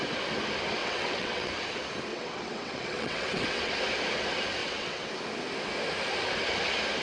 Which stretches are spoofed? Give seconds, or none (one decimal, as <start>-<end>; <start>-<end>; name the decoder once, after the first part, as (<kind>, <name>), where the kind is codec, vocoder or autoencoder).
0.8-1.5 (vocoder, WaveNeXt); 2.1-3.7; 4.6-5.1